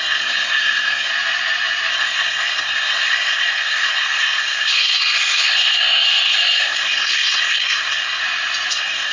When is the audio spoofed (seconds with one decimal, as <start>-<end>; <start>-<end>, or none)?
0.0-1.1; 1.9-8.2; 8.7-9.1